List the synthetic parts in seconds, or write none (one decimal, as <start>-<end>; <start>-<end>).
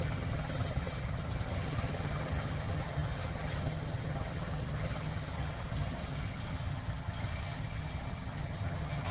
0.0-9.1